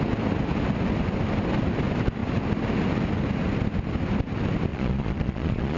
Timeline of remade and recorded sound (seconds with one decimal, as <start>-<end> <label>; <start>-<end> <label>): 0.0-4.7 recorded; 4.7-5.8 remade